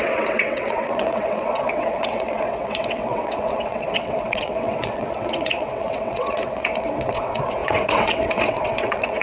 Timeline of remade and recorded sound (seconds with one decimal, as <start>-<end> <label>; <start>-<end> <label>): 0.0-9.2 remade